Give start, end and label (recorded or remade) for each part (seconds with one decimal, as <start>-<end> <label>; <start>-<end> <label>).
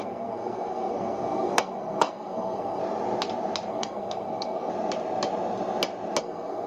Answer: 0.0-2.8 remade; 2.8-3.7 recorded; 3.7-4.7 remade; 4.7-6.2 recorded; 6.2-6.7 remade